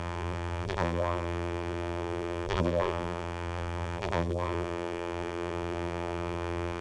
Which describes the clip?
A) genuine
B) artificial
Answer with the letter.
B